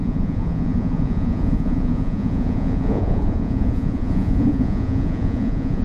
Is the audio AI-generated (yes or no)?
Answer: yes